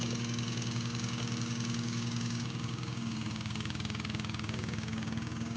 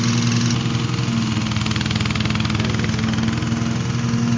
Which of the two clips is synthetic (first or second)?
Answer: first